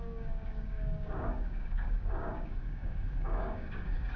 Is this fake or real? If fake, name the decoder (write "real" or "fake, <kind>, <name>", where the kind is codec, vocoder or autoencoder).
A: fake, codec, DAC